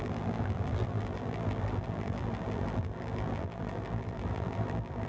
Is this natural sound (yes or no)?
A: no